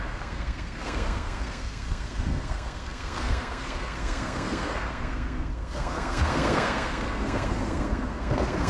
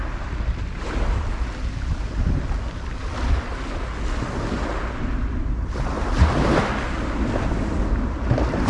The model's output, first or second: first